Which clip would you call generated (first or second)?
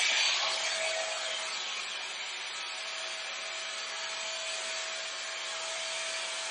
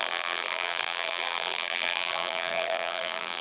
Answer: second